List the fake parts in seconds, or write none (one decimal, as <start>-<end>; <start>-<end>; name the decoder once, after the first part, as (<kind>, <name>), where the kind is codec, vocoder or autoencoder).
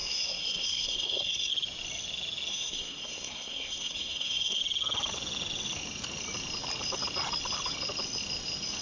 0.0-1.5 (codec, SNAC); 2.5-4.6